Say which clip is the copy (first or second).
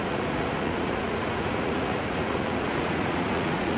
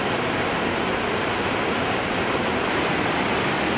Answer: first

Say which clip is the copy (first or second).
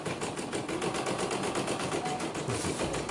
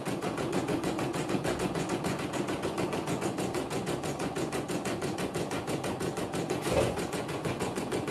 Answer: second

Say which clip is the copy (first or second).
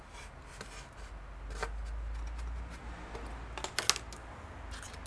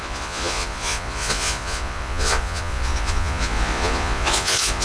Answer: second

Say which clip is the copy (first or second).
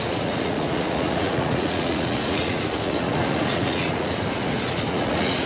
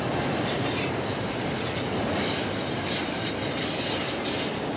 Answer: first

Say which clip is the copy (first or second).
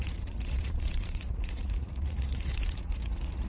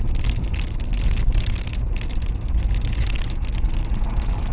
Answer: first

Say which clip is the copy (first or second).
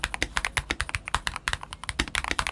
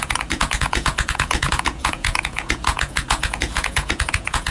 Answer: second